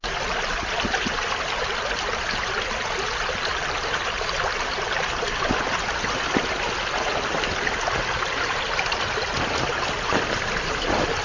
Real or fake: real